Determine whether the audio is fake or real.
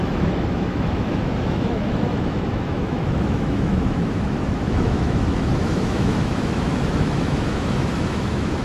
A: fake